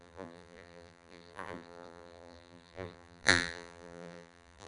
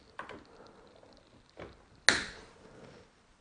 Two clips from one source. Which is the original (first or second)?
second